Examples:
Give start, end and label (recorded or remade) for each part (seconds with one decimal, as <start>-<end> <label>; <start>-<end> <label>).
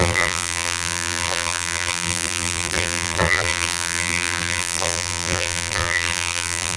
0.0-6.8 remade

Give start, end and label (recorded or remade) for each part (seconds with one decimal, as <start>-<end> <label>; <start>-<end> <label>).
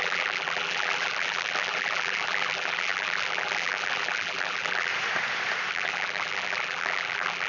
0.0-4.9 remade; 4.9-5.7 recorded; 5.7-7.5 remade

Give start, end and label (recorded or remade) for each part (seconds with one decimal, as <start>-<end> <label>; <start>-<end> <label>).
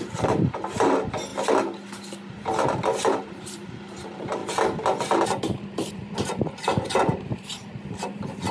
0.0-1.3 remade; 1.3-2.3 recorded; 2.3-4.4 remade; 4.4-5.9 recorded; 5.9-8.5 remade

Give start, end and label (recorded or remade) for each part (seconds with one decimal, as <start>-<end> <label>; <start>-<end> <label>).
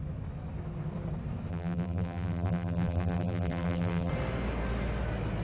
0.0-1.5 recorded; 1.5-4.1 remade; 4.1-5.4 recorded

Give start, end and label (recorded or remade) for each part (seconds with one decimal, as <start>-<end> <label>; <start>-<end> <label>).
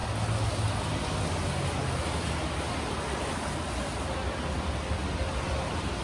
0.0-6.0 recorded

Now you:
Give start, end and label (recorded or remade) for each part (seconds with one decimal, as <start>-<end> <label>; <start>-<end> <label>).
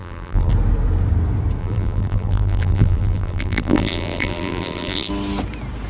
0.0-0.5 remade; 0.5-1.6 recorded; 1.6-5.1 remade; 5.1-5.9 recorded